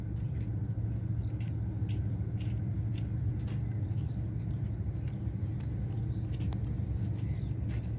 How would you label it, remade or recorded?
recorded